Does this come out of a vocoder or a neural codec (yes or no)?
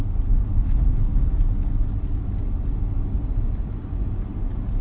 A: no